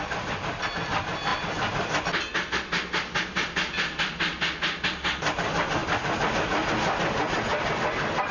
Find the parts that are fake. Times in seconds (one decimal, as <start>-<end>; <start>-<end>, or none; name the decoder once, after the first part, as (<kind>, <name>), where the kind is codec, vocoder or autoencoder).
none